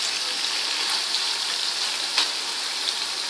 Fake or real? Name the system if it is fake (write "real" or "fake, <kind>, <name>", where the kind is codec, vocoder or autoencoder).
real